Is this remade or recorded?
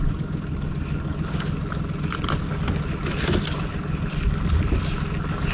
recorded